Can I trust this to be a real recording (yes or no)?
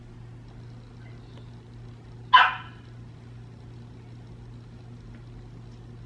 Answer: yes